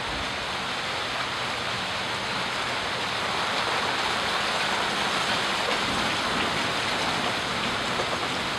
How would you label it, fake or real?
real